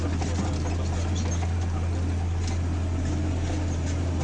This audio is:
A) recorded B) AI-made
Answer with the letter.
A